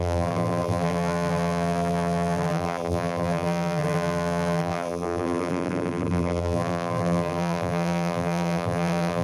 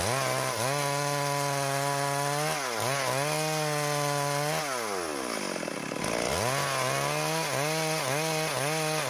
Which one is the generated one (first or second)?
first